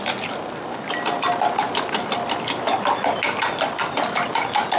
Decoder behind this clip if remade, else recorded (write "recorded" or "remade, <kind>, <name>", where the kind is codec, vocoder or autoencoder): recorded